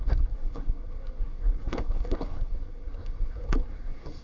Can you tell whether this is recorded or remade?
remade